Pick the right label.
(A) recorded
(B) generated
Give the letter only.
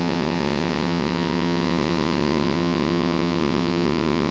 B